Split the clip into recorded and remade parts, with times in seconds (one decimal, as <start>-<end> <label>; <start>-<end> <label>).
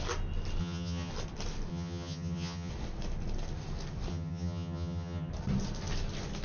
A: 0.0-0.6 recorded; 0.6-1.1 remade; 1.1-1.7 recorded; 1.7-2.7 remade; 2.7-4.1 recorded; 4.1-5.3 remade; 5.3-6.4 recorded